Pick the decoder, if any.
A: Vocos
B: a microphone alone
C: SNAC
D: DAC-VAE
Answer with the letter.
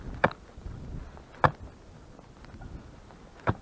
B